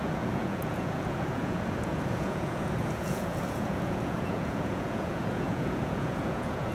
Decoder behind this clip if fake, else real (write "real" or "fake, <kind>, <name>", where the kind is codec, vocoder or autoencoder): fake, vocoder, Vocos